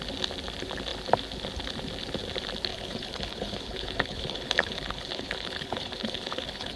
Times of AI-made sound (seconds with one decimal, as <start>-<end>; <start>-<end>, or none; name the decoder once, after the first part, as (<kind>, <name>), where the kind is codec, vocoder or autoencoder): 2.7-6.8 (codec, HILCodec)